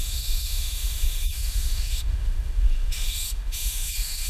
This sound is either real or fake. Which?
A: fake